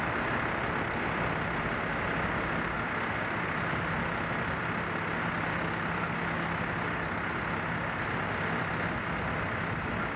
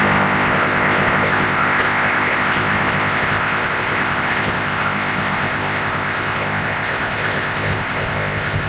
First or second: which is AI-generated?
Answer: second